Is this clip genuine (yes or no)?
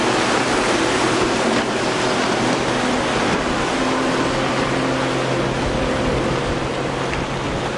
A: yes